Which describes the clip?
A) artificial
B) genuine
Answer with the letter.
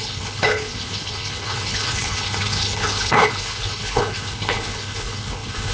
A